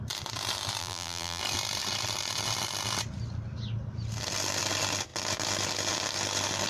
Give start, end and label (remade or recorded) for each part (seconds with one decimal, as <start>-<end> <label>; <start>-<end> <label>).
0.0-0.8 recorded; 0.8-1.4 remade; 1.4-6.7 recorded